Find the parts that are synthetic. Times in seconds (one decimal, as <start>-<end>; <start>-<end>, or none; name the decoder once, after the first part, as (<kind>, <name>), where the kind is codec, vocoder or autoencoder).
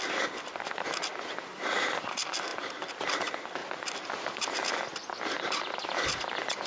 none